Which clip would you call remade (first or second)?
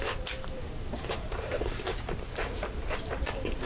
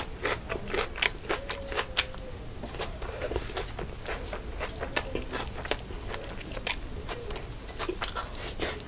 first